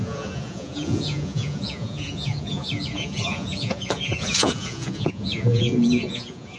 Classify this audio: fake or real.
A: fake